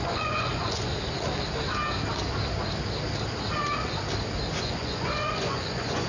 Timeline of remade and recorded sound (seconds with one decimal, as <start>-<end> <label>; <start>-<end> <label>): 0.0-0.9 remade; 0.9-4.6 recorded; 4.6-6.1 remade

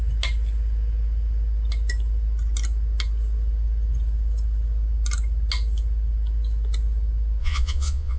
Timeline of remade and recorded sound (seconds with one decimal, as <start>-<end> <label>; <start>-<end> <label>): 0.0-7.4 recorded; 7.4-8.2 remade